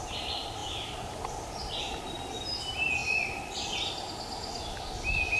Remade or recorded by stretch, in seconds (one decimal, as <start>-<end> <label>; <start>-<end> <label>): 0.0-0.6 recorded; 0.6-2.0 remade; 2.0-5.4 recorded